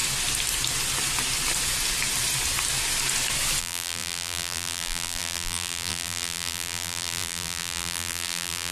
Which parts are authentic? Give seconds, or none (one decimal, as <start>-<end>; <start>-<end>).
0.0-3.6